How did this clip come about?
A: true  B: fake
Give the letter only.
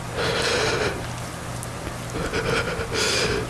A